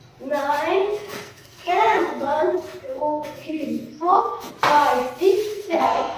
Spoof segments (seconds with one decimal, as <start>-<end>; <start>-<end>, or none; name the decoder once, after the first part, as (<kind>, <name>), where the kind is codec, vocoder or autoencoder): 0.8-4.5 (codec, SNAC); 5.5-6.2

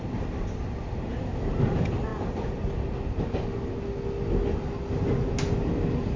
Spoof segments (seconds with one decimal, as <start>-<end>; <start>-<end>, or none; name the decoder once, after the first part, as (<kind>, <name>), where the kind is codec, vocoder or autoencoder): none

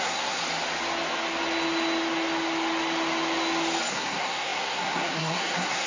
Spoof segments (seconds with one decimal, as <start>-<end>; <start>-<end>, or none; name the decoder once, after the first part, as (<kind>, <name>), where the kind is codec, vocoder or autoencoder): 0.0-0.4 (codec, SNAC); 3.9-5.9

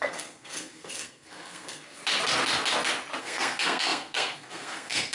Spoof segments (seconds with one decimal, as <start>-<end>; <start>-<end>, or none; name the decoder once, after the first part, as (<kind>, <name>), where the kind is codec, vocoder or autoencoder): 0.0-2.0 (codec, SNAC); 3.2-5.1

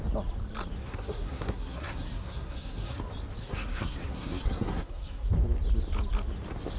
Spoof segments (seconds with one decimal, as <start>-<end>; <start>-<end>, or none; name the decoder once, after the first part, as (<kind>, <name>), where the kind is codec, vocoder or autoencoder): 0.8-3.0 (codec, SNAC); 3.4-5.3

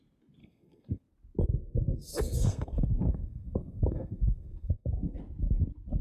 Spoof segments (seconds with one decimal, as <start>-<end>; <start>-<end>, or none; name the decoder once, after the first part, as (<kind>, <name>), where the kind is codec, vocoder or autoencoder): 0.4-1.0 (codec, SNAC); 1.6-5.2

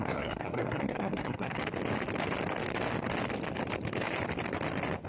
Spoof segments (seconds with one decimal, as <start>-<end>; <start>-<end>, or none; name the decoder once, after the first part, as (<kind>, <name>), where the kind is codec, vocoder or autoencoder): 0.0-1.6 (codec, SNAC)